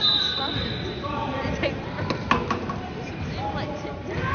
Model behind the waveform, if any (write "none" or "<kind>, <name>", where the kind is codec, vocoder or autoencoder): none